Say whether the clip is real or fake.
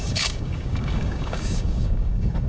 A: fake